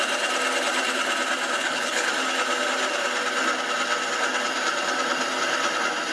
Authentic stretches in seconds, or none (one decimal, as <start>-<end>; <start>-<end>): 0.0-1.6; 2.1-6.1